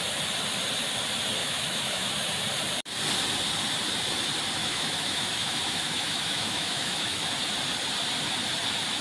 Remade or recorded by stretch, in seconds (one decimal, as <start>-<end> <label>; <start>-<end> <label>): 0.0-1.4 recorded; 1.4-2.1 remade; 2.1-4.6 recorded; 4.6-7.3 remade; 7.3-9.0 recorded